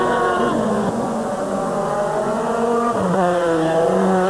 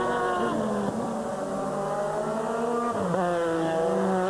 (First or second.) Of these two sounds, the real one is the second